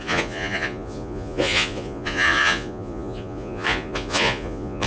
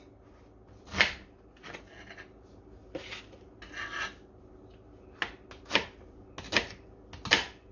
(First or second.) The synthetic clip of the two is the first